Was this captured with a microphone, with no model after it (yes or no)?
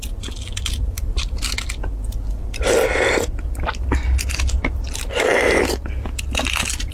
yes